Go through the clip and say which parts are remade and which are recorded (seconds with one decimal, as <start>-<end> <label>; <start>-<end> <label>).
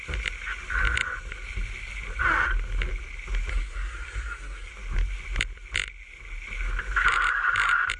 0.0-3.5 recorded; 3.5-4.7 remade; 4.7-8.0 recorded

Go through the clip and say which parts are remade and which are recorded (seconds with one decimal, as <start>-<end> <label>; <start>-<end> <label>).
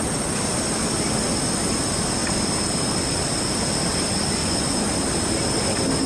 0.0-4.4 recorded; 4.4-4.9 remade; 4.9-6.1 recorded